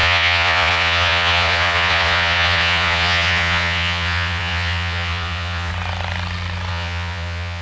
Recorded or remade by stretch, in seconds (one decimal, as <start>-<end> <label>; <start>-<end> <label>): 0.0-5.7 remade; 5.7-6.7 recorded; 6.7-7.6 remade